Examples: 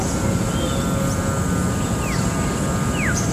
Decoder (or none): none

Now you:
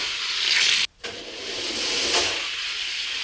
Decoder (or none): none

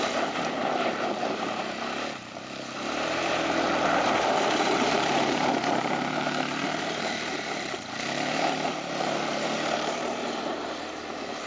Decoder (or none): vocoder, BigVGAN v2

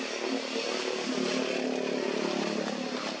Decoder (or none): none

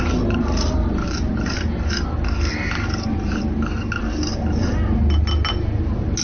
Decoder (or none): none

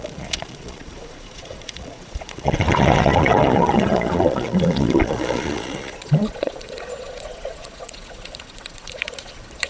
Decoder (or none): vocoder, Vocos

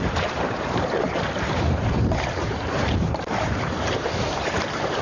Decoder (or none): vocoder, BigVGAN v2